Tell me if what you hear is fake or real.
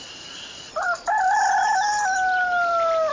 real